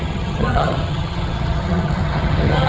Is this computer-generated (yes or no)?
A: yes